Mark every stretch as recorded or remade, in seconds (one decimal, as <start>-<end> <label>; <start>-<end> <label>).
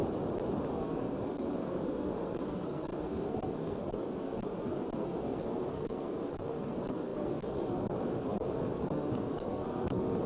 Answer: 0.0-0.7 recorded; 0.7-10.3 remade